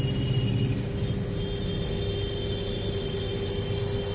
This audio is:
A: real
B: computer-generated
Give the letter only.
A